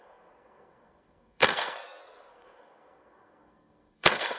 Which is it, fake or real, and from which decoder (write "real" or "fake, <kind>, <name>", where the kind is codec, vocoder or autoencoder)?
fake, codec, SNAC